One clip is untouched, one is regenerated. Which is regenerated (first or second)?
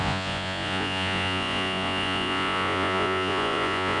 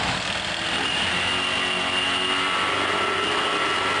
first